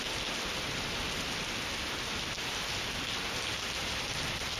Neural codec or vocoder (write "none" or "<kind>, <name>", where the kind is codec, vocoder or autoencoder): none